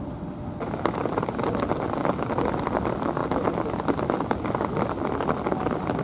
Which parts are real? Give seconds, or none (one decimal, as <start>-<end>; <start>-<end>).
0.0-6.0